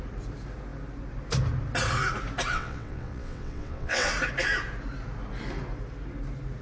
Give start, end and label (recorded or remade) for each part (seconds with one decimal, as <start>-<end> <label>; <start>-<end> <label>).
0.0-2.5 recorded; 2.5-4.1 remade; 4.1-6.6 recorded